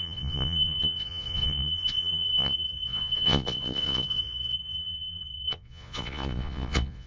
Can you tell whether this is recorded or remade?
remade